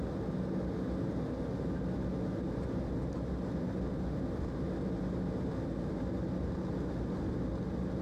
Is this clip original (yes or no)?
yes